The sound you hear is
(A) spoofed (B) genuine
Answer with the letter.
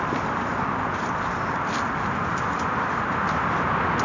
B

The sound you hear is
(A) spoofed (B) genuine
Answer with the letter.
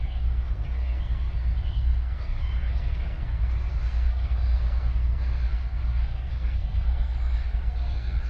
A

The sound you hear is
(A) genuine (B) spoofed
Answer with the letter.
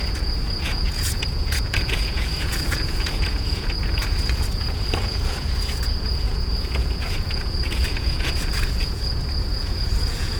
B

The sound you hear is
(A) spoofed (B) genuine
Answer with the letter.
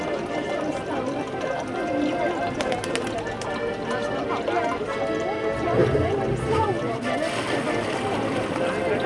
B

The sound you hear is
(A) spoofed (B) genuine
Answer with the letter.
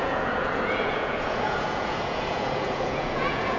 A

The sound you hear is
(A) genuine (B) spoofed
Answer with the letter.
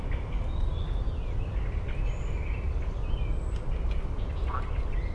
A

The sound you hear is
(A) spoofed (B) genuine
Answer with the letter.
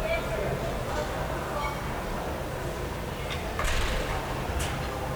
B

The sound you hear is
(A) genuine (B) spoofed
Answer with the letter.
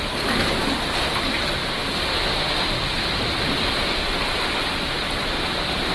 B